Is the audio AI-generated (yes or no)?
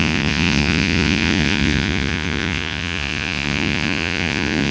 yes